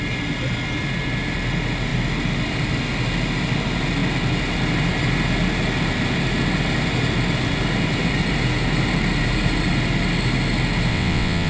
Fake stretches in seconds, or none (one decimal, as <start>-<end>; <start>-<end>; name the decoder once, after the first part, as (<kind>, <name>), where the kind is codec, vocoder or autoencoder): 10.9-11.5 (vocoder, WaveNeXt)